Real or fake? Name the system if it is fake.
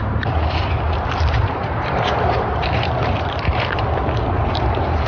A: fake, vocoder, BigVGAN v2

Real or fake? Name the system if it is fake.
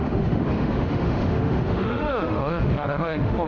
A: fake, autoencoder, DAC-VAE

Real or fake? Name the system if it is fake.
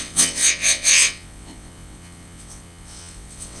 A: fake, vocoder, WaveNeXt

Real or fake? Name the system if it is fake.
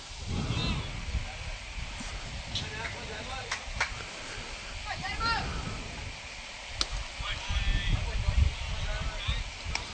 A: real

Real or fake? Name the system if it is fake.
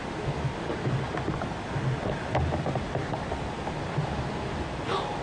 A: real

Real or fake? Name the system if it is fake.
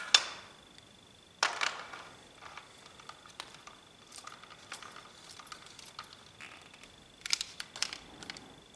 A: real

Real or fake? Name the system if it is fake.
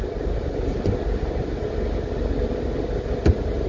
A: real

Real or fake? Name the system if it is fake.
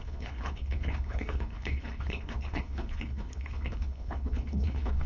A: fake, codec, HILCodec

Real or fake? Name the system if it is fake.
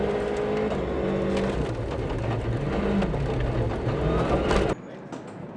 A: real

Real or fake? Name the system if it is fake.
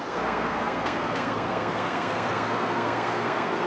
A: fake, codec, SNAC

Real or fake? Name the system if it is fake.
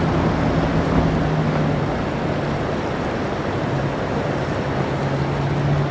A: real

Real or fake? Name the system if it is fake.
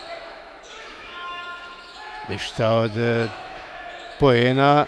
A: fake, autoencoder, DAC-VAE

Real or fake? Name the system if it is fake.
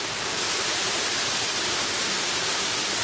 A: real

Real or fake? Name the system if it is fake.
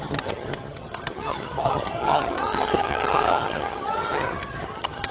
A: fake, vocoder, HiFi-GAN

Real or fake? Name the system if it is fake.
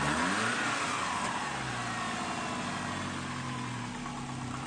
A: real